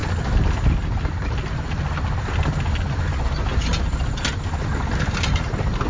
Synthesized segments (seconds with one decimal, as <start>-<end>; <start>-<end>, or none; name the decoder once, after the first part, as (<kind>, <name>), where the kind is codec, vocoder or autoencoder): none